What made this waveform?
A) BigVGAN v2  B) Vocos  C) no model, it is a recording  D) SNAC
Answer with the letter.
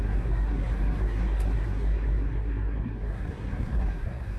D